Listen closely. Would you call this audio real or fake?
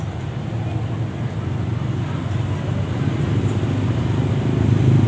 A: real